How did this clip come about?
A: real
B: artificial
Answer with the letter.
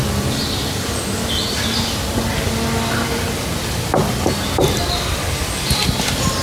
A